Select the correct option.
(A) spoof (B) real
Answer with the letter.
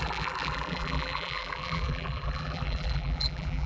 A